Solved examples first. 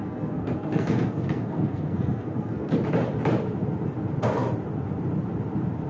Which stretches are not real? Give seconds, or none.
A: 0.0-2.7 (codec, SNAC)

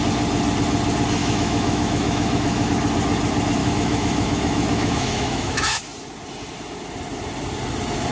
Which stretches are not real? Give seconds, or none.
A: 1.2-2.7 (autoencoder, DAC-VAE); 3.6-5.8